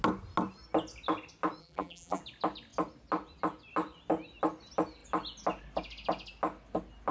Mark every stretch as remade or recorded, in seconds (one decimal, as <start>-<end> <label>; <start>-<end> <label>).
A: 0.0-1.6 recorded; 1.6-2.2 remade; 2.2-7.1 recorded

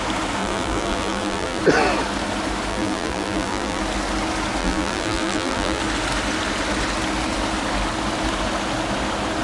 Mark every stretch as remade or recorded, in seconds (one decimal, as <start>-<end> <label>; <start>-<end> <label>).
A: 0.0-0.4 recorded; 0.4-1.6 remade; 1.6-2.7 recorded; 2.7-3.8 remade; 3.8-4.6 recorded; 4.6-5.8 remade; 5.8-9.4 recorded

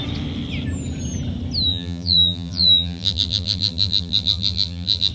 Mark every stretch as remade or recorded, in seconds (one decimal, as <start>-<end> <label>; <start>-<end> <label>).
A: 0.0-1.7 recorded; 1.7-5.1 remade

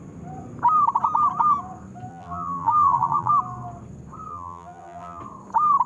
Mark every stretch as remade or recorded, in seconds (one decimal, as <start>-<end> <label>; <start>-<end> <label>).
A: 0.0-2.1 recorded; 2.1-3.3 remade; 3.3-4.3 recorded; 4.3-5.2 remade; 5.2-5.9 recorded

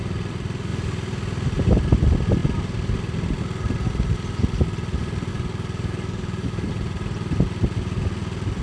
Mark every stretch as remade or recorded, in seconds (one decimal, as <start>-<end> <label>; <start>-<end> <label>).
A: 0.0-5.3 recorded; 5.3-6.7 remade; 6.7-8.6 recorded

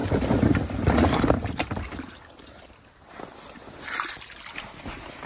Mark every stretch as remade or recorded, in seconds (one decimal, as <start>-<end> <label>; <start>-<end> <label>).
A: 0.0-3.2 remade; 3.2-5.3 recorded

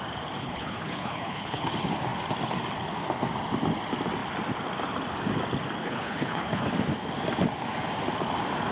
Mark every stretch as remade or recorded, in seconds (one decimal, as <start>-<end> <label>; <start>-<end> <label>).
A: 0.0-0.4 recorded; 0.4-1.7 remade; 1.7-5.8 recorded; 5.8-6.7 remade; 6.7-8.7 recorded